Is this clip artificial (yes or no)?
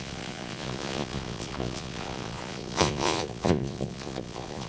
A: yes